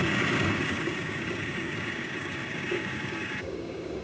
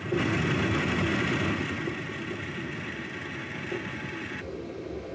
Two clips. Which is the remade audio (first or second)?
first